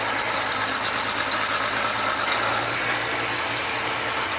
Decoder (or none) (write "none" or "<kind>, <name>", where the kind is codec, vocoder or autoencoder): none